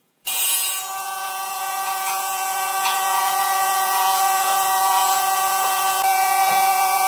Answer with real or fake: fake